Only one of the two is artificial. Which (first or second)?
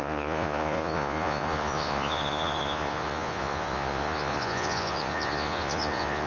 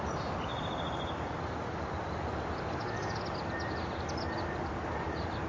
first